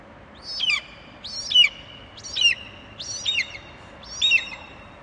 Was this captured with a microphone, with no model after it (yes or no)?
yes